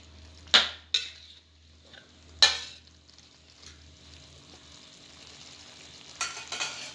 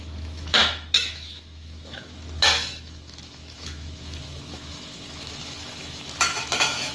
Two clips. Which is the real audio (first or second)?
first